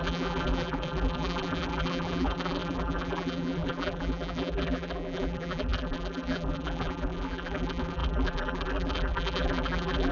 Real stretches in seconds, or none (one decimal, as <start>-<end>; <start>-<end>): none